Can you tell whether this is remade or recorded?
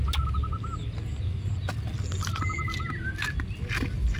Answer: recorded